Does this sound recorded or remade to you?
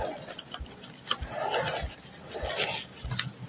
recorded